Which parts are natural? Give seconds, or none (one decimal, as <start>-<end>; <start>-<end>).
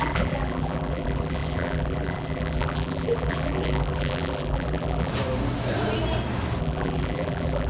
5.1-6.6